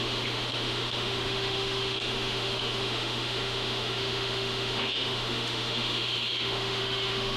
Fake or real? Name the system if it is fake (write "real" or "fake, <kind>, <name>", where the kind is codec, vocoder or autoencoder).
fake, autoencoder, DAC-VAE